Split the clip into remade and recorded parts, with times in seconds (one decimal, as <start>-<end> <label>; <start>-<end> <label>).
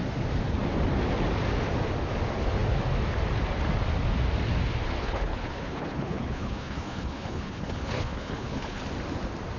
0.0-5.0 recorded; 5.0-8.8 remade; 8.8-9.6 recorded